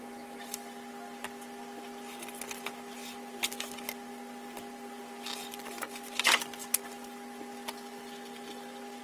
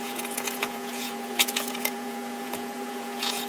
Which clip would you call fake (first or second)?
second